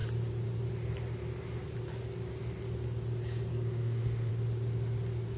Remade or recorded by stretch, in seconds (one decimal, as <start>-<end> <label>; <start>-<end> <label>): 0.0-3.5 recorded; 3.5-4.3 remade; 4.3-5.4 recorded